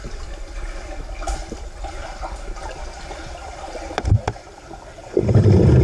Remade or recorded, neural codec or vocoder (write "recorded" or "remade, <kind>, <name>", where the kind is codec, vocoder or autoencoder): remade, vocoder, BigVGAN v2